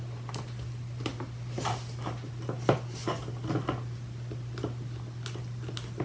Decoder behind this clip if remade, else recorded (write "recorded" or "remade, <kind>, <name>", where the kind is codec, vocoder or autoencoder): recorded